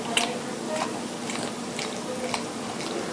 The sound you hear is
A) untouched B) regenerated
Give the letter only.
A